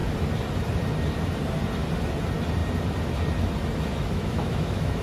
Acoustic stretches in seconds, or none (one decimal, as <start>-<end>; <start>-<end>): 0.0-3.9